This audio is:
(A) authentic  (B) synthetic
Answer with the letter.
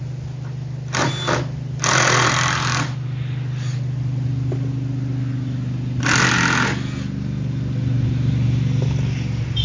A